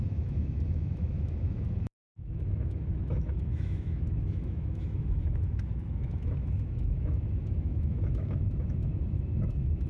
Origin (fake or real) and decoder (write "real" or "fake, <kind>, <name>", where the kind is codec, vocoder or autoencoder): fake, autoencoder, DAC-VAE